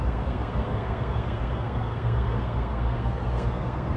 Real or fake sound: fake